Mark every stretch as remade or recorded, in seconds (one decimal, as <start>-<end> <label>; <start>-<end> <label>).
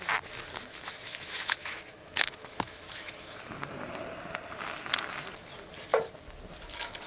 0.0-0.7 recorded; 0.7-3.7 remade; 3.7-7.1 recorded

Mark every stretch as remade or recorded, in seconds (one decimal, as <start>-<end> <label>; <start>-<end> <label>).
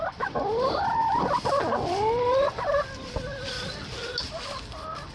0.0-5.1 recorded